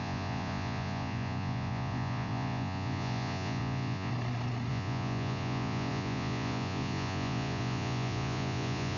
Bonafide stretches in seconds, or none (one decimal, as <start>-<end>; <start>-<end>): 4.1-4.7